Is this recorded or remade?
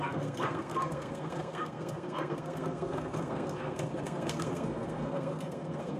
remade